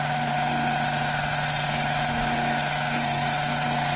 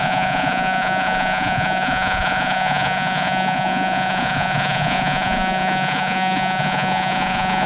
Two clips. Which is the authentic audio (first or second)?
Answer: first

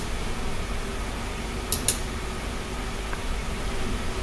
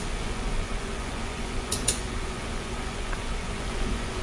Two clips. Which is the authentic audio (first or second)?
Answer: first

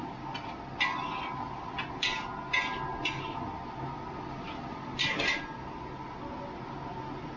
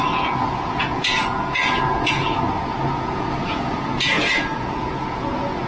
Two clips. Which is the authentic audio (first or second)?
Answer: first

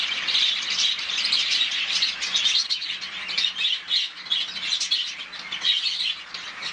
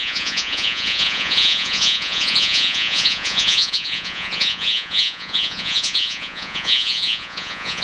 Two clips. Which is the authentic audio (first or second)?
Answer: first